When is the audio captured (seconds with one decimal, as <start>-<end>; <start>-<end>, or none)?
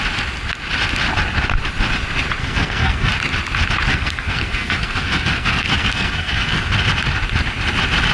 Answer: 0.0-2.4; 3.1-3.9; 6.7-8.1